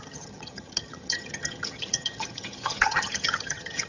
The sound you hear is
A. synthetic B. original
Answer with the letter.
A